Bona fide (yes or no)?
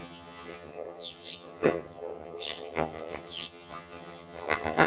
no